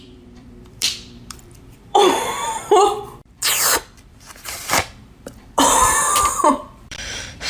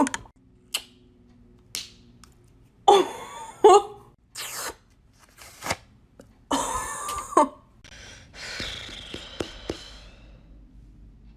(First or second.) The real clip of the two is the second